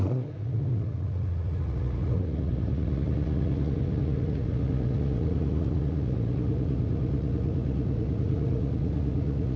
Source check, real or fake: fake